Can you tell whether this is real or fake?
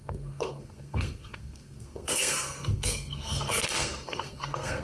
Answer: fake